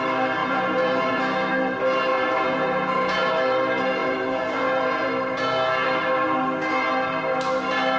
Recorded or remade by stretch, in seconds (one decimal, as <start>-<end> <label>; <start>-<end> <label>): 0.0-0.4 recorded; 0.4-1.2 remade; 1.2-2.1 recorded; 2.1-3.3 remade; 3.3-4.0 recorded; 4.0-5.1 remade; 5.1-8.0 recorded